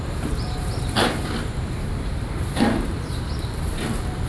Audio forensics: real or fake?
fake